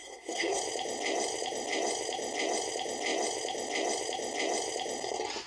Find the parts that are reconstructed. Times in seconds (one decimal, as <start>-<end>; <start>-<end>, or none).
0.0-0.6

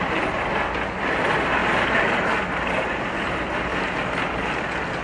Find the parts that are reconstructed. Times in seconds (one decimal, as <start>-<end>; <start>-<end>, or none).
none

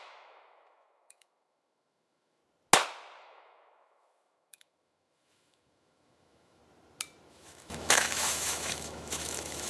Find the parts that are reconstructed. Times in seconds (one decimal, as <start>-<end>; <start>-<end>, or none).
0.0-2.4; 3.2-6.6; 7.3-9.7

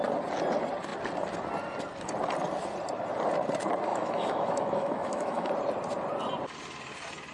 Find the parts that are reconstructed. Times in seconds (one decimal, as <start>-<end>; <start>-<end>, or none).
3.9-5.5